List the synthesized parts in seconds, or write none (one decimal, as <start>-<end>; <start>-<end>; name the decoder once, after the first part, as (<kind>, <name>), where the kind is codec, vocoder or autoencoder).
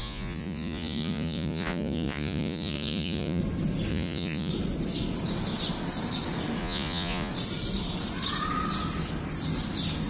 0.0-3.4 (vocoder, Vocos); 3.9-4.5; 6.6-7.3